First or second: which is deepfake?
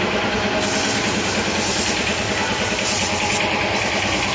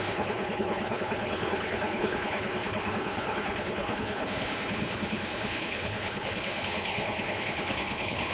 second